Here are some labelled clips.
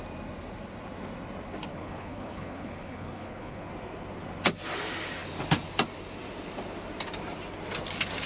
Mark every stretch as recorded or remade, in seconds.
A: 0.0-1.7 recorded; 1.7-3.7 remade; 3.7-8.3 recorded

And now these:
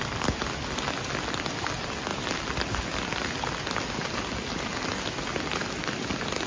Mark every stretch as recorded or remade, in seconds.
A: 0.0-6.5 recorded

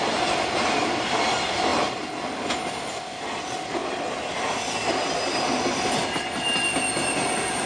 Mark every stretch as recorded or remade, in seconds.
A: 0.0-7.7 recorded

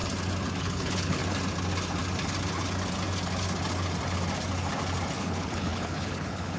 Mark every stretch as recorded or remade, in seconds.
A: 0.0-0.6 recorded; 0.6-1.2 remade; 1.2-5.2 recorded; 5.2-6.6 remade

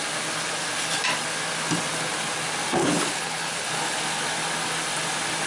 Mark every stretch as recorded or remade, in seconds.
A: 0.0-2.8 recorded; 2.8-3.7 remade; 3.7-5.5 recorded